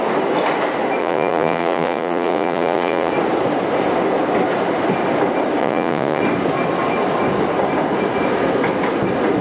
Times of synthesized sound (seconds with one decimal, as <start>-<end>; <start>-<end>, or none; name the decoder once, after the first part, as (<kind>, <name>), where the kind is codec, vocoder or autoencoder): 1.0-3.1 (vocoder, Vocos); 5.6-6.2